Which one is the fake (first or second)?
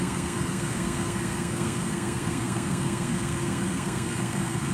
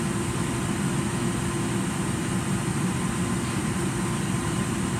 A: first